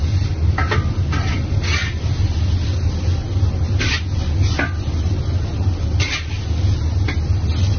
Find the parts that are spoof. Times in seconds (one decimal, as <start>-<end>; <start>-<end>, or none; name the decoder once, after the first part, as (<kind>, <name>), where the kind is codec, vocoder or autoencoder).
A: none